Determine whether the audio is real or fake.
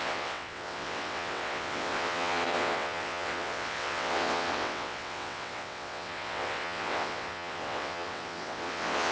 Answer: fake